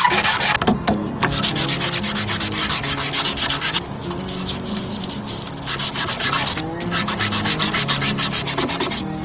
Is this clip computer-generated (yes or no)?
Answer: no